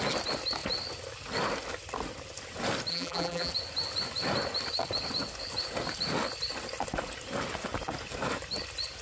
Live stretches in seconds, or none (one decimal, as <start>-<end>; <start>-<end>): 0.0-2.9; 3.5-9.0